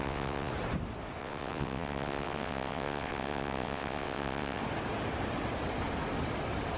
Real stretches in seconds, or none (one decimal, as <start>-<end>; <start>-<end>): 0.5-1.2; 4.6-6.8